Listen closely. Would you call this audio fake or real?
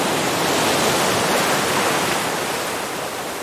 real